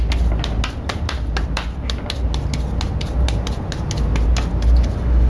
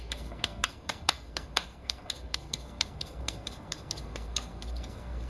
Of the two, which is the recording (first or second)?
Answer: first